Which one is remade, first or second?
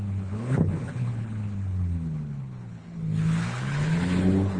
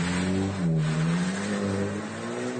first